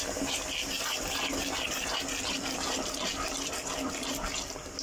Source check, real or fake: real